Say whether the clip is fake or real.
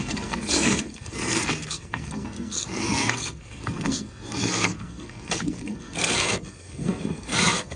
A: fake